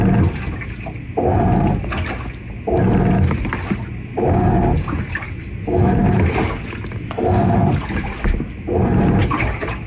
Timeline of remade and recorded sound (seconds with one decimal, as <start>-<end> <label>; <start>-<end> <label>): 0.0-9.9 recorded